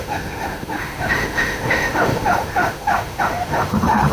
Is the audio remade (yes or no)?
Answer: yes